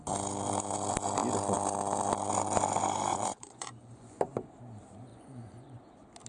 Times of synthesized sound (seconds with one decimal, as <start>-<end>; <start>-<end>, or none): 3.1-4.2; 5.1-5.8